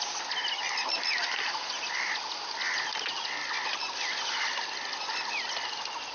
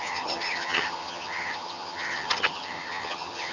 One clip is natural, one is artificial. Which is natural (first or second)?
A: first